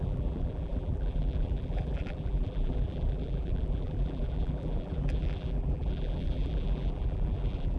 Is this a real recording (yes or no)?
no